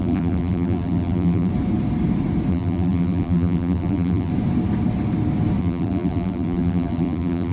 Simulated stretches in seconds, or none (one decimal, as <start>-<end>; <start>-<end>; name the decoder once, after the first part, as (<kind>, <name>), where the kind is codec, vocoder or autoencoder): 0.0-1.5 (vocoder, BigVGAN v2); 2.5-4.3; 5.6-7.5